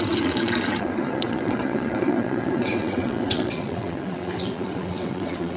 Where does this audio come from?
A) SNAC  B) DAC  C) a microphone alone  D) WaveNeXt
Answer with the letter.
D